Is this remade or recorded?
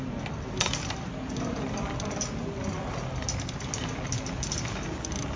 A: recorded